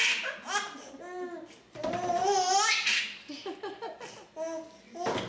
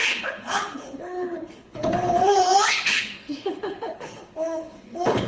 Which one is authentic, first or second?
first